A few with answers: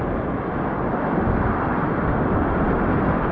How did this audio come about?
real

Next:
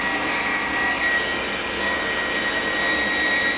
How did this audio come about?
real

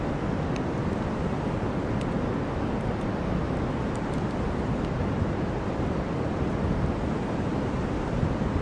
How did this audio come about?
real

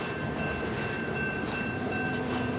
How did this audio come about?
fake